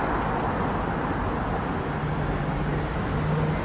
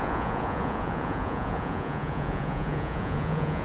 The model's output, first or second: second